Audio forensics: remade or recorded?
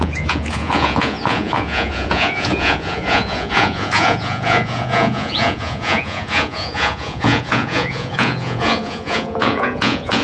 remade